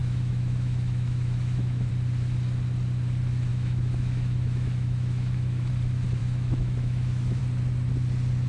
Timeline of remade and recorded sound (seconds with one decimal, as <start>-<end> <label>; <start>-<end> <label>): 0.0-1.9 remade; 1.9-3.5 recorded; 3.5-5.7 remade; 5.7-6.2 recorded; 6.2-7.4 remade; 7.4-8.5 recorded